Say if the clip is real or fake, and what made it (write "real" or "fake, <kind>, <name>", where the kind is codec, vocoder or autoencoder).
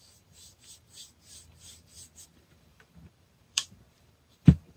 fake, vocoder, BigVGAN v2